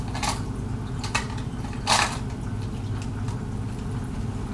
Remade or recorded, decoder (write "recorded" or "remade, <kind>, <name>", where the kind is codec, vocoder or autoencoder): recorded